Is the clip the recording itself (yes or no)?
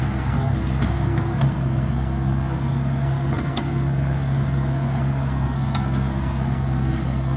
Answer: no